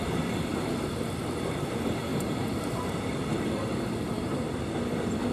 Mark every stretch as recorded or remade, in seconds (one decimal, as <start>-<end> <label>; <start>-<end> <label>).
0.0-0.5 recorded; 0.5-1.7 remade; 1.7-2.1 recorded; 2.1-4.6 remade; 4.6-5.3 recorded

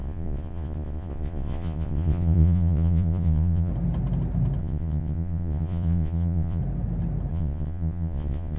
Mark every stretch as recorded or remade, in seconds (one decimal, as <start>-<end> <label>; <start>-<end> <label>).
0.0-3.7 remade; 3.7-4.6 recorded; 4.6-6.6 remade; 6.6-7.3 recorded; 7.3-8.6 remade

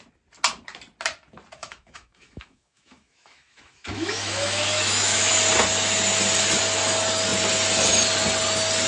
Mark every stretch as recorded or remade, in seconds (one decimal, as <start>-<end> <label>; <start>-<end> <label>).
0.0-1.6 recorded; 1.6-5.3 remade; 5.3-8.9 recorded

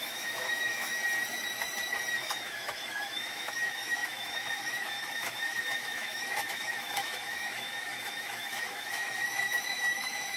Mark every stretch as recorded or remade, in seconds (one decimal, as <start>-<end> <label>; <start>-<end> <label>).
0.0-1.0 remade; 1.0-2.2 recorded; 2.2-10.4 remade

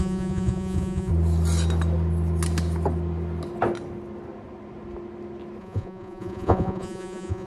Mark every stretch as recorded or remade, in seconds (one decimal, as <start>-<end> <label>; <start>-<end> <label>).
0.0-1.1 remade; 1.1-5.6 recorded; 5.6-7.5 remade

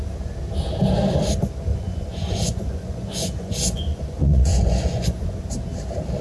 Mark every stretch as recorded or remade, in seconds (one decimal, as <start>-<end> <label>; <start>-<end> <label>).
0.0-1.7 recorded; 1.7-5.4 remade; 5.4-6.2 recorded

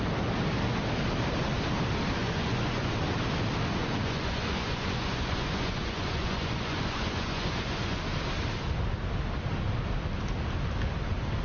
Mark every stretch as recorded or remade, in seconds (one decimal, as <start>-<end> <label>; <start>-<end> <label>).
0.0-2.2 recorded; 2.2-2.9 remade; 2.9-3.8 recorded; 3.8-8.0 remade; 8.0-11.4 recorded